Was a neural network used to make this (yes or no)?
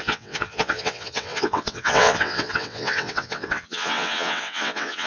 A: yes